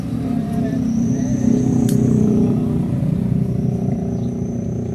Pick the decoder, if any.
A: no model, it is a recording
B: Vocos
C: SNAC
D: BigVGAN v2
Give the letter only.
D